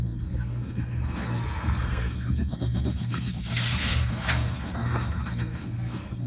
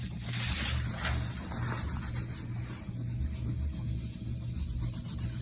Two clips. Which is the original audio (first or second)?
second